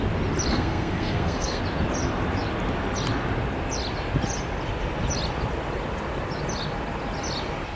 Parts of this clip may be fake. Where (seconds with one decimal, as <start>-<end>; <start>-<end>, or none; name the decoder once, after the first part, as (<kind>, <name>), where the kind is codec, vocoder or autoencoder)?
0.5-1.6 (codec, SNAC)